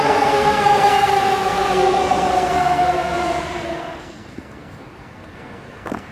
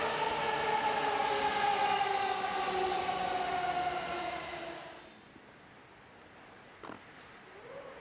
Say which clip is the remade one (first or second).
first